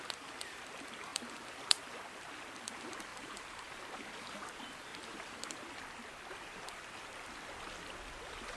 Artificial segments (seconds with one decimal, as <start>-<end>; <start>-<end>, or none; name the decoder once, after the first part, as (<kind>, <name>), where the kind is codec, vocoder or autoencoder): 1.1-1.6 (vocoder, BigVGAN v2); 3.1-3.8; 4.9-5.6